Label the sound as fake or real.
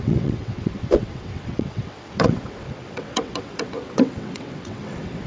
fake